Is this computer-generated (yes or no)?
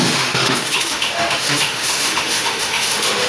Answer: yes